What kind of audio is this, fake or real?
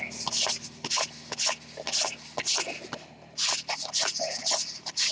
real